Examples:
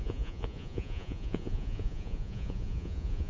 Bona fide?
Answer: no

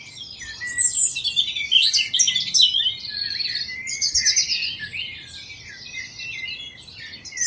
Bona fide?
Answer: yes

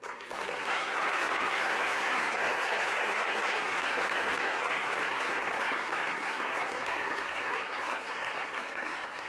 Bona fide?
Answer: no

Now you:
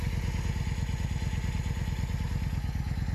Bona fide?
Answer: yes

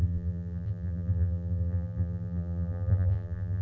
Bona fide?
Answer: no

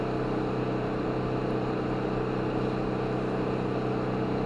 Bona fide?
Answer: yes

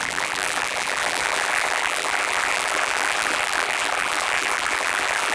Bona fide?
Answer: no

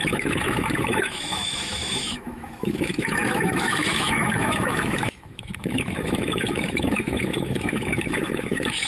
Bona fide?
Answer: no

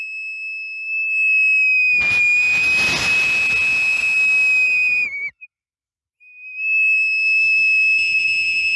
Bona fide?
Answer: yes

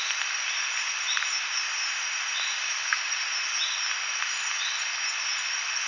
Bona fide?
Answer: yes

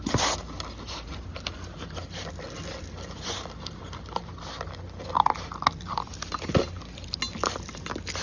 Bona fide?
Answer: yes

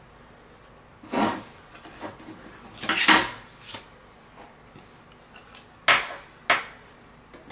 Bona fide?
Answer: yes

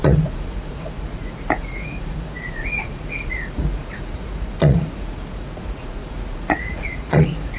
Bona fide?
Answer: no